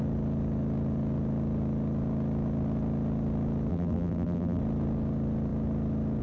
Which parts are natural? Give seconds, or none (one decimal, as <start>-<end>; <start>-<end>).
0.0-3.7; 4.6-6.2